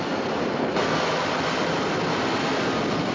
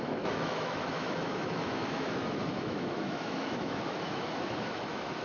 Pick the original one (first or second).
first